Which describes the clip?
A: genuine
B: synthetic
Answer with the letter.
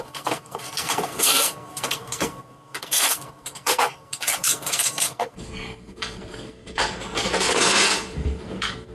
B